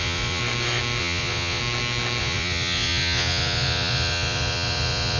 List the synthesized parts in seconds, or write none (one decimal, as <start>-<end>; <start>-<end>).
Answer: 0.0-0.4; 1.0-1.6; 2.2-5.2